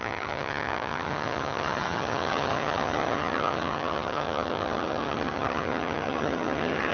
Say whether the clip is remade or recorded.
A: remade